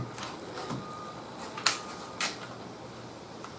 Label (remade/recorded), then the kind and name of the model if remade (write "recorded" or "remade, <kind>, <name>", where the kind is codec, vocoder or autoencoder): remade, vocoder, BigVGAN v2